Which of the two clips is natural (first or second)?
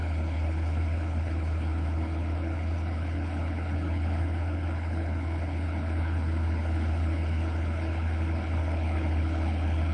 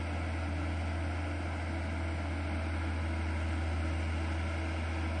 second